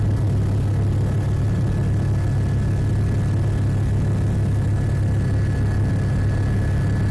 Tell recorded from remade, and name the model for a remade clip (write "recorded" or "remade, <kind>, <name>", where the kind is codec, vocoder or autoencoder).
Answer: recorded